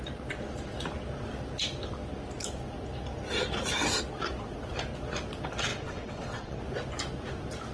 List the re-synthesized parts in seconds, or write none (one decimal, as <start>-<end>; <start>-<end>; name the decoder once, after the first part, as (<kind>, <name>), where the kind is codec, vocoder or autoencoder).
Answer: 5.7-6.6 (vocoder, WaveNeXt)

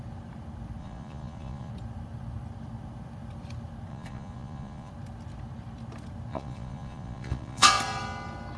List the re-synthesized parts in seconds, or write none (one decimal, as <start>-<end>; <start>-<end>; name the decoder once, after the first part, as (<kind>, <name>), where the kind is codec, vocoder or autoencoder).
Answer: 0.8-1.7 (vocoder, Vocos); 3.9-4.9; 6.3-7.8

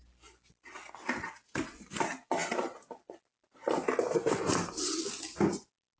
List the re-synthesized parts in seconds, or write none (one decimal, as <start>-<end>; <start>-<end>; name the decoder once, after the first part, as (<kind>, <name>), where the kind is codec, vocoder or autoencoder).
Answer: none

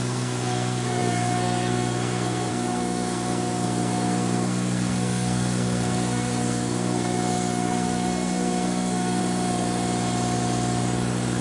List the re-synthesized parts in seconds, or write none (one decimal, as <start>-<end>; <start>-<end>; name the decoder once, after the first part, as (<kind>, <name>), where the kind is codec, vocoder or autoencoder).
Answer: 0.0-9.2 (codec, SNAC)

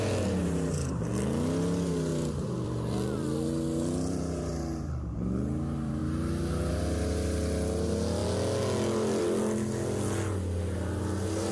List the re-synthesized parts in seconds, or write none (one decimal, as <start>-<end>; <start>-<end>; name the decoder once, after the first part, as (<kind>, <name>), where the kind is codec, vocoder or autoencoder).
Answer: 2.1-4.5 (vocoder, BigVGAN v2)

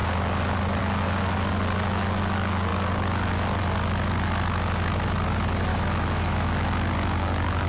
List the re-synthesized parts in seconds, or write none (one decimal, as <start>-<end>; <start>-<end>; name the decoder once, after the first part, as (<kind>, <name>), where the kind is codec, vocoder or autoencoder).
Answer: 5.7-6.9 (autoencoder, DAC-VAE)

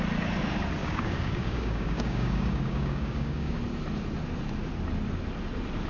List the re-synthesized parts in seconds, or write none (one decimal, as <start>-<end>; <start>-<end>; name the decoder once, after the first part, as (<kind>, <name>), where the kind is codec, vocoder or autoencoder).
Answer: 0.8-3.6 (codec, DAC)

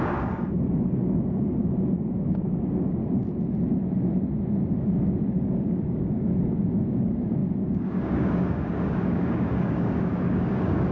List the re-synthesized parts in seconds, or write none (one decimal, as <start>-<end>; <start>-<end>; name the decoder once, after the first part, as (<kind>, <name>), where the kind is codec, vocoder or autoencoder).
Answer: 0.0-3.0 (codec, DAC); 4.7-10.9